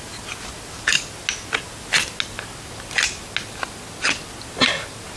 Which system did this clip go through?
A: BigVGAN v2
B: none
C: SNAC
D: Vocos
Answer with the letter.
B